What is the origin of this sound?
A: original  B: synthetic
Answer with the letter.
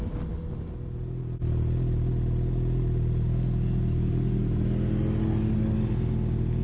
A